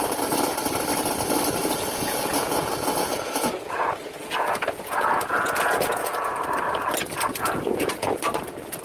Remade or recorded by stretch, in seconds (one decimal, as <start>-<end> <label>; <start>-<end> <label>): 0.0-1.6 recorded; 1.6-6.4 remade; 6.4-7.3 recorded; 7.3-8.2 remade; 8.2-8.8 recorded

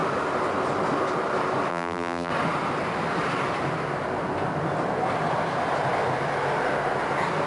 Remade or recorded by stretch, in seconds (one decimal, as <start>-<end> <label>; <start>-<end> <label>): 0.0-1.7 recorded; 1.7-2.3 remade; 2.3-7.5 recorded

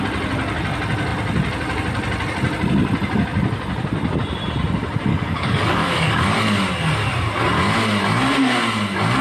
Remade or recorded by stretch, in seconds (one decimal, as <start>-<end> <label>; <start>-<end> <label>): 0.0-5.1 recorded; 5.1-6.7 remade; 6.7-9.2 recorded

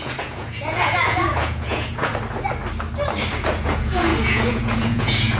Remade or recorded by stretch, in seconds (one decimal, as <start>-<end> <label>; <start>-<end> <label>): 0.0-2.1 remade; 2.1-3.3 recorded; 3.3-5.4 remade

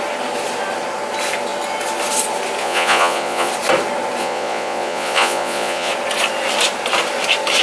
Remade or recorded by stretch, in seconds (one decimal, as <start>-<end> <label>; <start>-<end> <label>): 0.0-2.6 recorded; 2.6-3.5 remade; 3.5-4.2 recorded; 4.2-5.9 remade; 5.9-7.6 recorded

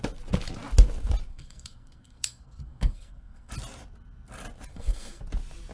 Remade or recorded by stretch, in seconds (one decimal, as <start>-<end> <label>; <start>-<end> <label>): 0.0-1.3 recorded; 1.3-3.5 remade; 3.5-4.7 recorded; 4.7-5.2 remade; 5.2-5.7 recorded

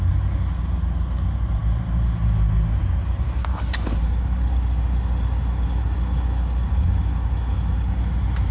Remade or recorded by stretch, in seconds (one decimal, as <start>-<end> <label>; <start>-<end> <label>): 0.0-8.5 recorded